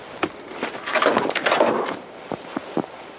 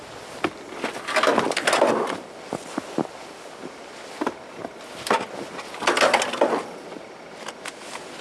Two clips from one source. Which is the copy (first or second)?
first